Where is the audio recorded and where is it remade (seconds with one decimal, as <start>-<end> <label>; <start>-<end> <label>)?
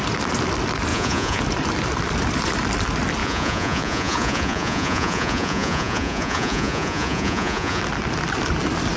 0.0-0.9 recorded; 0.9-1.4 remade; 1.4-3.2 recorded; 3.2-7.8 remade; 7.8-9.0 recorded